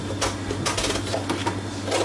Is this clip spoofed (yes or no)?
no